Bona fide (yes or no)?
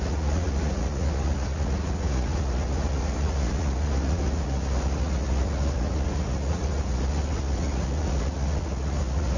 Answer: no